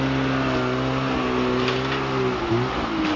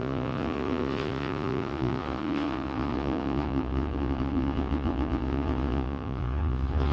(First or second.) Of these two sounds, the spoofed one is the second